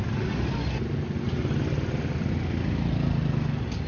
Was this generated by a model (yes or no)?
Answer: no